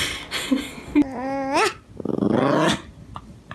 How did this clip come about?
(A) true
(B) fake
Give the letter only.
A